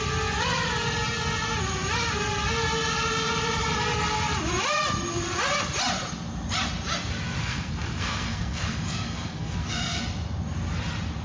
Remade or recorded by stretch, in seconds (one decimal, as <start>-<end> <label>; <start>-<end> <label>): 0.0-7.4 recorded; 7.4-10.0 remade; 10.0-11.2 recorded